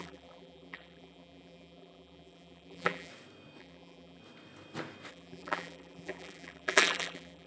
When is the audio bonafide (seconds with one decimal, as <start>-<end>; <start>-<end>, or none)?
3.1-3.6; 4.2-5.1